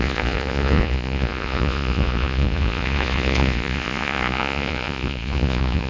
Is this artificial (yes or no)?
yes